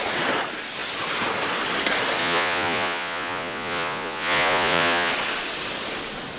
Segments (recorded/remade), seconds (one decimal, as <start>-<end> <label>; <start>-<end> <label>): 0.0-2.2 recorded; 2.2-5.1 remade; 5.1-6.4 recorded